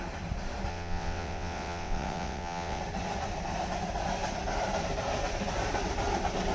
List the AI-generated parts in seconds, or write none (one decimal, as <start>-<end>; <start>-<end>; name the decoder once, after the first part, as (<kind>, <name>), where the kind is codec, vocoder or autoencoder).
0.7-2.8 (vocoder, WaveNeXt)